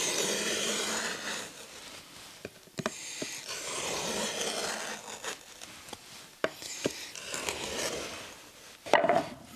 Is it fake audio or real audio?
real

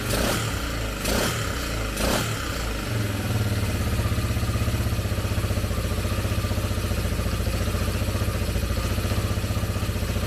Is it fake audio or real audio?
real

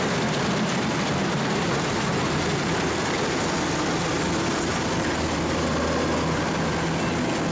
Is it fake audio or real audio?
real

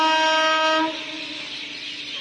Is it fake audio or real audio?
real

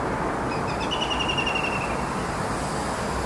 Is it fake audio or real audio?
real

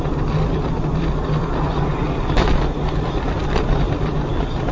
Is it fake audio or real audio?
real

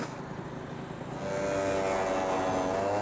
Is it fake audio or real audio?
real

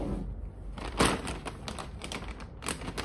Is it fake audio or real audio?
real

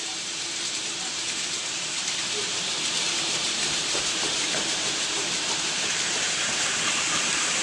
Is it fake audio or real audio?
fake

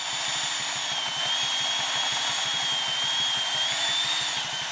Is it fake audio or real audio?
real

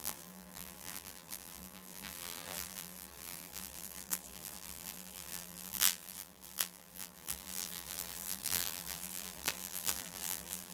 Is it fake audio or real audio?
fake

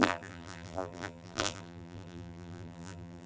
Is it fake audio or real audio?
fake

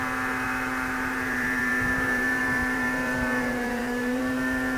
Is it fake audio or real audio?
fake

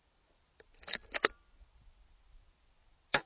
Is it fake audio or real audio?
fake